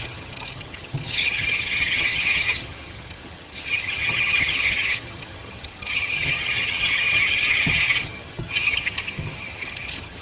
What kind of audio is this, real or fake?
fake